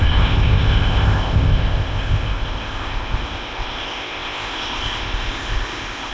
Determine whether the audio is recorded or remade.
remade